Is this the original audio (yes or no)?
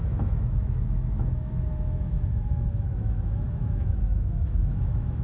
no